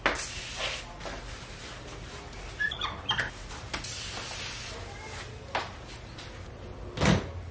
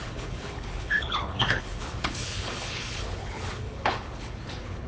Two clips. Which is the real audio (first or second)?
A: first